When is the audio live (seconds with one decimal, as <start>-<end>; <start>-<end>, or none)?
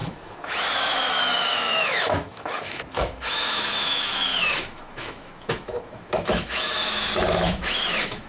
none